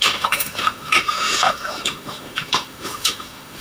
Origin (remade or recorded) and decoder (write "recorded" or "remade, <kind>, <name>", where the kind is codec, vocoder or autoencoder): remade, autoencoder, DAC-VAE